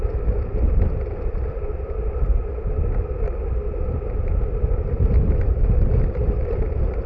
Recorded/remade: recorded